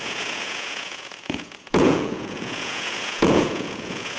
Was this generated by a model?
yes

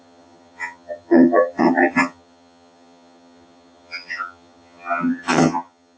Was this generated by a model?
yes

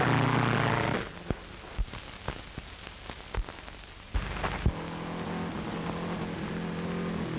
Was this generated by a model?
no